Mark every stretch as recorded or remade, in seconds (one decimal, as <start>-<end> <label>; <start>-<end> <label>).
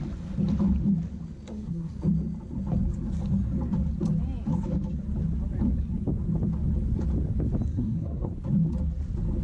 0.0-1.5 recorded; 1.5-2.0 remade; 2.0-7.7 recorded; 7.7-8.3 remade; 8.3-9.4 recorded